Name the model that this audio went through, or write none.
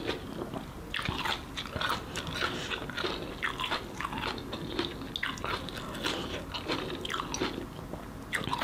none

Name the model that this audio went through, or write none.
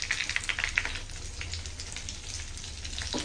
none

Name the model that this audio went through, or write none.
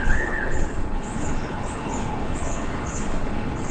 codec, HILCodec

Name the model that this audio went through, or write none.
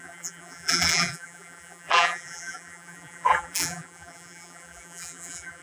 vocoder, BigVGAN v2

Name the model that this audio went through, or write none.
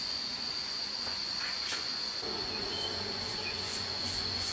vocoder, Vocos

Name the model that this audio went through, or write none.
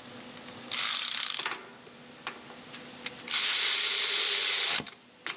none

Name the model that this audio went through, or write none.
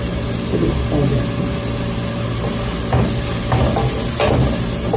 none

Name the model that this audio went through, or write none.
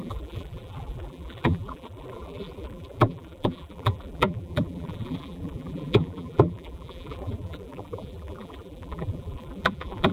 vocoder, BigVGAN v2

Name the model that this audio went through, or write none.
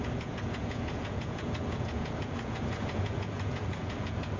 vocoder, Vocos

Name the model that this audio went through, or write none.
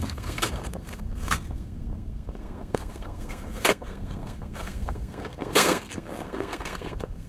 codec, SNAC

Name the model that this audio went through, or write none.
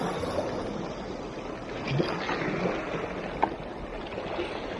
none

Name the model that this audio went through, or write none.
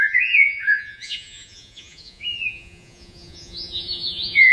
vocoder, Vocos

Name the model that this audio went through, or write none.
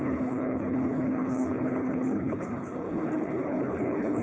codec, HILCodec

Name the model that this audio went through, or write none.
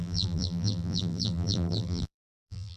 vocoder, BigVGAN v2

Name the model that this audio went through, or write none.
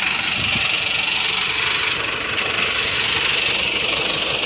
none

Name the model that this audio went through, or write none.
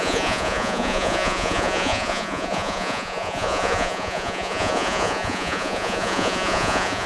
vocoder, Vocos